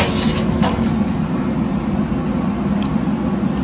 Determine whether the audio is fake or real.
real